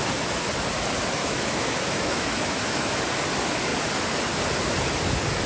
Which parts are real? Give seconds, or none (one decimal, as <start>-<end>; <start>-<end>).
0.0-1.2; 3.0-5.5